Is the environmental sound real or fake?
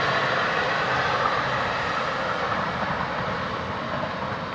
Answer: real